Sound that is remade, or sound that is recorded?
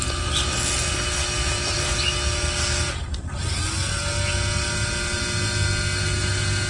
recorded